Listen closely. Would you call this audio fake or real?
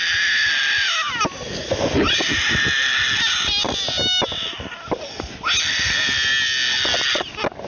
real